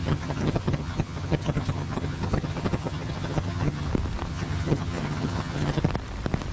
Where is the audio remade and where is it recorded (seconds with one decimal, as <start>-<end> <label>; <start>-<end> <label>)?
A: 0.0-3.9 remade; 3.9-4.3 recorded; 4.3-5.8 remade; 5.8-6.5 recorded